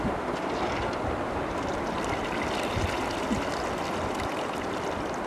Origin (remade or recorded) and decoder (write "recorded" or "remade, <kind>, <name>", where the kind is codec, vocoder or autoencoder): recorded